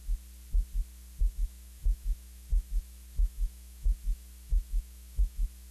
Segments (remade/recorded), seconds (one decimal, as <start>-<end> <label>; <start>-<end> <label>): 0.0-1.3 recorded; 1.3-5.7 remade